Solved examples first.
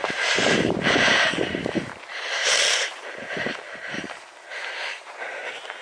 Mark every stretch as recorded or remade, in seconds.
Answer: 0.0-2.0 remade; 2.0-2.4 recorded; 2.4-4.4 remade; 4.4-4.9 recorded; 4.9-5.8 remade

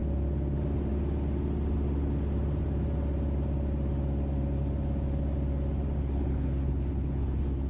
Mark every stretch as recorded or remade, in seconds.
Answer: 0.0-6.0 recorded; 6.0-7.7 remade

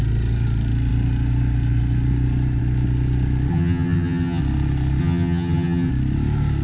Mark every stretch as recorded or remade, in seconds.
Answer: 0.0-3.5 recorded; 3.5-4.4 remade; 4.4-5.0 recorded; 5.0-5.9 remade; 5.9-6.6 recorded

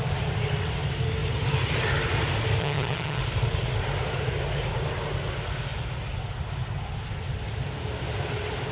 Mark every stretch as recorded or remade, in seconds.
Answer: 0.0-2.6 recorded; 2.6-3.2 remade; 3.2-8.7 recorded

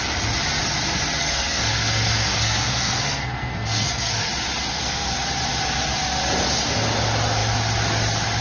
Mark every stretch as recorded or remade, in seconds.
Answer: 0.0-1.2 recorded; 1.2-4.3 remade; 4.3-4.7 recorded; 4.7-5.3 remade; 5.3-8.4 recorded

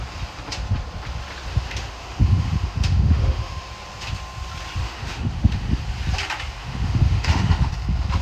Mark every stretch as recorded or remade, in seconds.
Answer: 0.0-1.5 recorded; 1.5-3.7 remade; 3.7-4.8 recorded; 4.8-5.8 remade; 5.8-6.6 recorded; 6.6-7.7 remade; 7.7-8.2 recorded